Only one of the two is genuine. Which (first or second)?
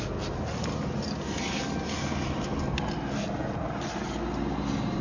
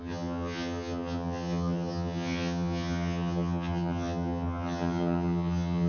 first